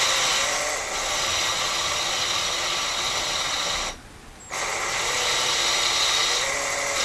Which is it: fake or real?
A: real